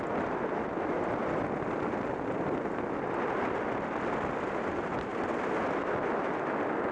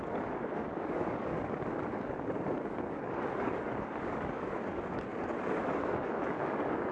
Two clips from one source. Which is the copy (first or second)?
second